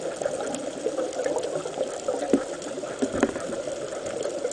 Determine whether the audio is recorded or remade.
recorded